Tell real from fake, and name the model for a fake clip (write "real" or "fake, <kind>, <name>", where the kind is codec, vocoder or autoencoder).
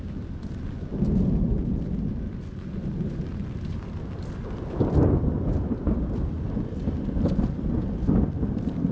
real